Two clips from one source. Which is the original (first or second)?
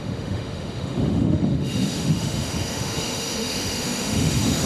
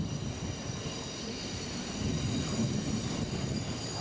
second